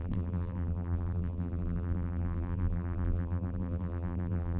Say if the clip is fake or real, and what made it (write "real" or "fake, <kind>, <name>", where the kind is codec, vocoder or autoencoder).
fake, vocoder, BigVGAN v2